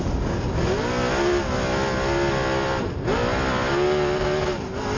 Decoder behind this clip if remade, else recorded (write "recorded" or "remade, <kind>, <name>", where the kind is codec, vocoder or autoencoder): recorded